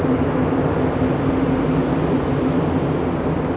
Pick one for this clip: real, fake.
real